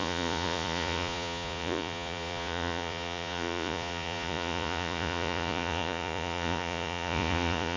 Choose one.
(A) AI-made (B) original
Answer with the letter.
A